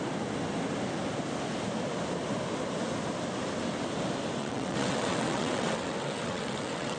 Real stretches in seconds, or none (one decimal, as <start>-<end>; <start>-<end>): 0.0-4.4